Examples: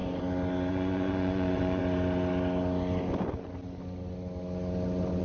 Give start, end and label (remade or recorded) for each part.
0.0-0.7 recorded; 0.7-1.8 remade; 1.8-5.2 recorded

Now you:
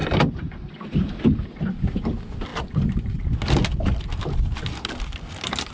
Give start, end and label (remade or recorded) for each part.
0.0-5.7 recorded

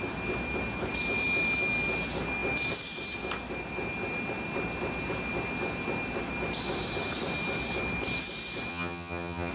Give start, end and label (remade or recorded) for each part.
0.0-8.7 recorded; 8.7-9.5 remade

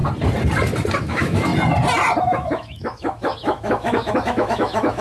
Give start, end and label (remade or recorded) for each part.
0.0-1.0 recorded; 1.0-1.5 remade; 1.5-2.2 recorded; 2.2-5.0 remade

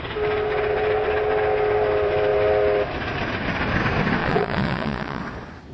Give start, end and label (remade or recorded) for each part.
0.0-4.2 recorded; 4.2-5.2 remade; 5.2-5.7 recorded